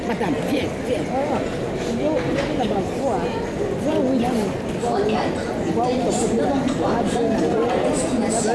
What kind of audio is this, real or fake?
real